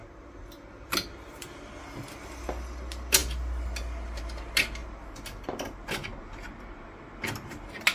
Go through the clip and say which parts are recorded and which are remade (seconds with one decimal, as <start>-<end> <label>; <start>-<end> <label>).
0.0-1.7 remade; 1.7-7.9 recorded